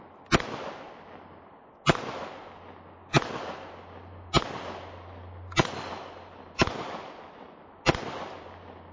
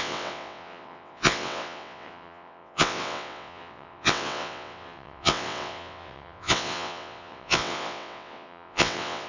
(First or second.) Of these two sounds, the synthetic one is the second